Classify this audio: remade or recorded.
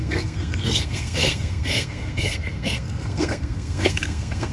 remade